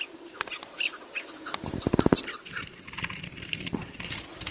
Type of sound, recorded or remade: recorded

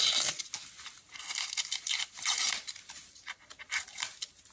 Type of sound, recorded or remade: recorded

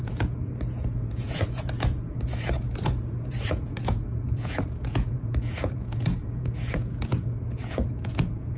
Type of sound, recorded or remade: remade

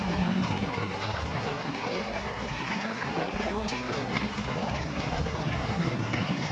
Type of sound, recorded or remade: remade